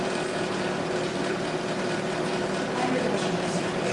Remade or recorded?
remade